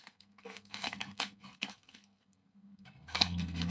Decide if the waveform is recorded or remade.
remade